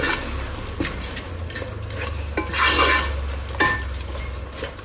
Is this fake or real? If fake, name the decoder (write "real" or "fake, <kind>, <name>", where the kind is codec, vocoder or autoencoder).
real